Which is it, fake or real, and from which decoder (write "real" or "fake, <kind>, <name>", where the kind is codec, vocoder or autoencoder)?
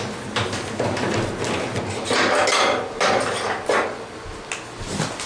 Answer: real